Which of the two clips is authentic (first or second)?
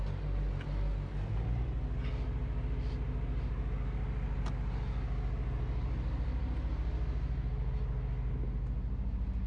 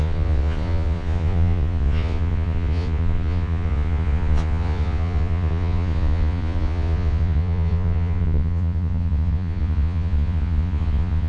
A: first